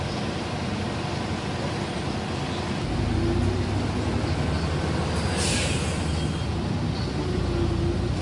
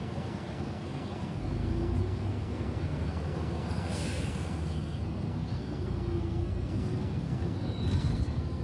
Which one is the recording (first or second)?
first